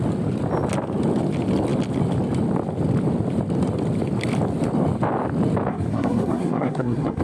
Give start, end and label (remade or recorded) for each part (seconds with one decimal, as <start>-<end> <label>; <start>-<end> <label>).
0.0-5.7 recorded; 5.7-7.2 remade

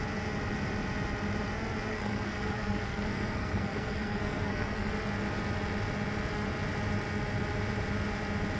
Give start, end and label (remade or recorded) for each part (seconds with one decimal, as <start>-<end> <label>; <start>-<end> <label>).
0.0-1.9 recorded; 1.9-4.9 remade; 4.9-8.6 recorded

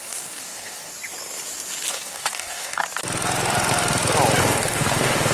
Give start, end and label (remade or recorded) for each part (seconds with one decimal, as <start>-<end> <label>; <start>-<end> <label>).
0.0-0.9 remade; 0.9-1.9 recorded; 1.9-2.8 remade; 2.8-4.4 recorded; 4.4-5.3 remade

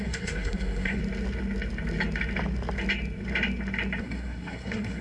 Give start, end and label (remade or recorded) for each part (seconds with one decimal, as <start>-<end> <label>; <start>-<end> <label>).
0.0-1.0 remade; 1.0-4.0 recorded; 4.0-5.0 remade

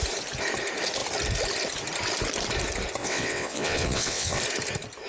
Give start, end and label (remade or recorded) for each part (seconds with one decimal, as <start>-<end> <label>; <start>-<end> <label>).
0.0-3.0 recorded; 3.0-4.4 remade; 4.4-5.1 recorded

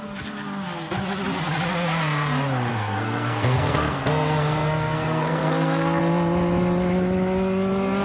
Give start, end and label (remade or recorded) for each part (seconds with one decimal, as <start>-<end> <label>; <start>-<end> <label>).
0.0-2.7 recorded; 2.7-6.0 remade; 6.0-8.0 recorded

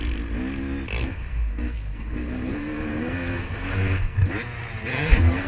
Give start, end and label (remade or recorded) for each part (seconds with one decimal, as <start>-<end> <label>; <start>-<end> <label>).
0.0-1.0 recorded; 1.0-4.3 remade; 4.3-4.9 recorded; 4.9-5.5 remade